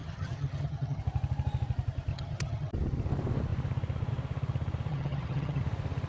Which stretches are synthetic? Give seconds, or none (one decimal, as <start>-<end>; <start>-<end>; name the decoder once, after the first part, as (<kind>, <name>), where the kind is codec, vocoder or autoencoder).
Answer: 0.0-1.0 (vocoder, HiFi-GAN); 2.1-2.7; 4.9-5.6

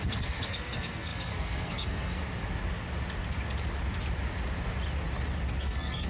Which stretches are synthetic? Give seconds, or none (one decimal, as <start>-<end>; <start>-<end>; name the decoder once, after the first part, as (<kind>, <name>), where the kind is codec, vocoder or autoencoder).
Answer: 0.0-2.2 (codec, SNAC); 5.6-6.1

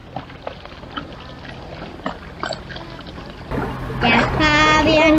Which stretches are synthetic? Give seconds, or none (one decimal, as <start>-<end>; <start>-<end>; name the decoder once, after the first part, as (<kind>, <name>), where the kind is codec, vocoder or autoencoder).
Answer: none

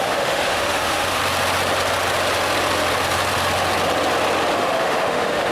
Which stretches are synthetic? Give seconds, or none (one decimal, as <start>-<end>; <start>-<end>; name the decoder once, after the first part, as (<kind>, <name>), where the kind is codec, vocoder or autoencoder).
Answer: 0.0-1.2 (autoencoder, DAC-VAE); 4.5-5.5

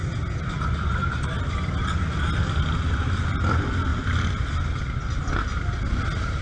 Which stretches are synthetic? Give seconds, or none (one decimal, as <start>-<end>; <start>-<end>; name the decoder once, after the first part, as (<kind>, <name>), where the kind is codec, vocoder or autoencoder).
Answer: none

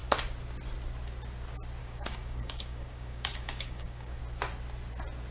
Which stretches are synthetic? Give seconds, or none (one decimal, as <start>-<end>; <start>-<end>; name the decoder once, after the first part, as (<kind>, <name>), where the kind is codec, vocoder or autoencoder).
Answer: 1.8-4.2 (codec, DAC)

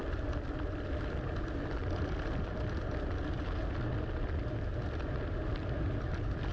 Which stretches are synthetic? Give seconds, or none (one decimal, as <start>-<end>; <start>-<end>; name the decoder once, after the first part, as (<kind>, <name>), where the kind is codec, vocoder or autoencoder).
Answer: 0.0-0.5 (vocoder, BigVGAN v2); 1.8-2.5; 5.6-6.5